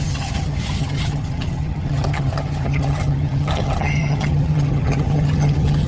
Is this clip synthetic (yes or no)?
yes